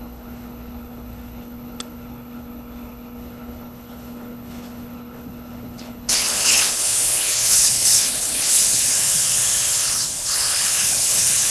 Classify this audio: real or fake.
fake